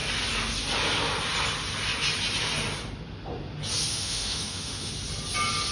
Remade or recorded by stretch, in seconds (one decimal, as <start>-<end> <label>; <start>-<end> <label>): 0.0-3.9 recorded; 3.9-4.9 remade; 4.9-5.7 recorded